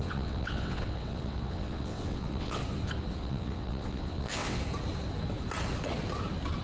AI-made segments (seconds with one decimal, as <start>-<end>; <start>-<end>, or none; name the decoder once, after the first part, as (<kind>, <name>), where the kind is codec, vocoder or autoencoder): 0.0-2.6 (vocoder, WaveNeXt); 3.2-4.6